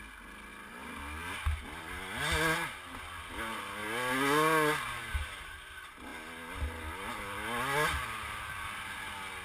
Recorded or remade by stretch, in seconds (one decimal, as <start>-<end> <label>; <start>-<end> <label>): 0.0-9.4 recorded